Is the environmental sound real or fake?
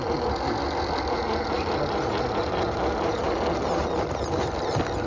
real